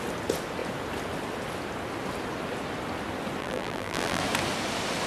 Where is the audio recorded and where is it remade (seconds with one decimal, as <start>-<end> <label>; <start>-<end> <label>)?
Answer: 0.0-3.4 recorded; 3.4-4.2 remade; 4.2-5.1 recorded